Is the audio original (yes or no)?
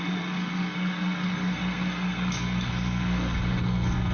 no